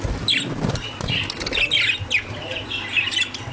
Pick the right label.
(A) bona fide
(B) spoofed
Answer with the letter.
A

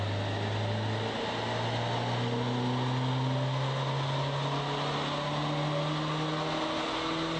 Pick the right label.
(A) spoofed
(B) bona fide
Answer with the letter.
B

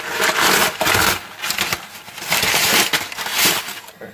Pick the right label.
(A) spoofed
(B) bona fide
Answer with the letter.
B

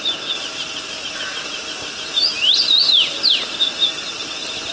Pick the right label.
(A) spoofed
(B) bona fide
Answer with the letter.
B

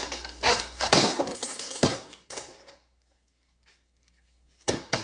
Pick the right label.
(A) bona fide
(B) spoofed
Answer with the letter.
B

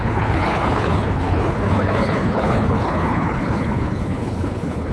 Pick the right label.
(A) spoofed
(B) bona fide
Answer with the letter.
A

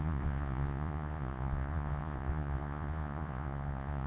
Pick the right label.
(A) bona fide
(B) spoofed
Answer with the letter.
B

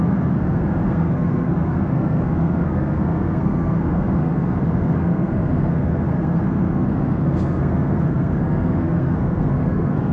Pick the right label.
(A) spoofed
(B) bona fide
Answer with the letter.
A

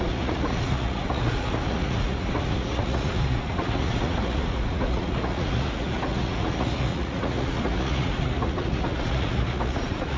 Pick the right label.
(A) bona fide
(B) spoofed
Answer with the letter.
B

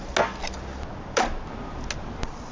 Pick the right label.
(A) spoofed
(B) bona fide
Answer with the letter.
B